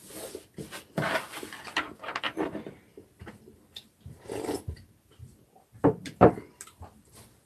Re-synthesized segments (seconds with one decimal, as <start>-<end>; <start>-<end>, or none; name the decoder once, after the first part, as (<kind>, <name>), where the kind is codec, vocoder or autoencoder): 2.2-7.5 (vocoder, BigVGAN v2)